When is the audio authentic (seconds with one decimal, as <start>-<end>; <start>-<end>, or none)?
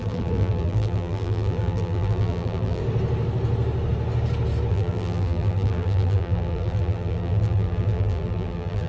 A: 2.8-4.7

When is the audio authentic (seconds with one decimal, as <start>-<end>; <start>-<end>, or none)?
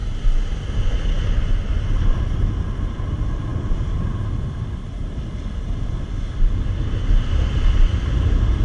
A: 0.0-8.6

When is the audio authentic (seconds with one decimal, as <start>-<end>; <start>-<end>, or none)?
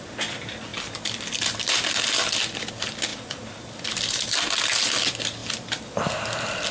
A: 0.0-0.7; 2.7-5.4; 6.1-6.7